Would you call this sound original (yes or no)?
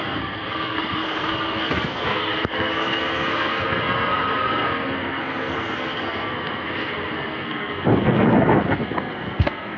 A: no